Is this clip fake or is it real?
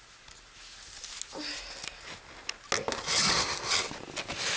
real